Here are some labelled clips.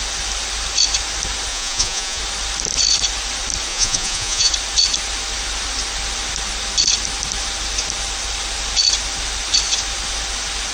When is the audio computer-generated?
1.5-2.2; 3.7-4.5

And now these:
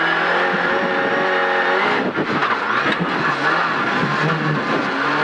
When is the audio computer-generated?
none

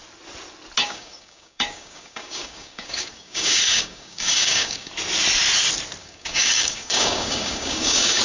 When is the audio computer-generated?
0.8-4.9; 6.0-8.2